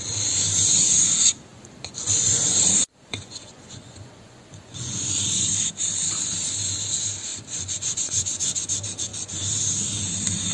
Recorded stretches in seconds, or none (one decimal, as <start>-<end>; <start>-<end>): 0.0-1.5; 5.5-7.3; 8.6-10.5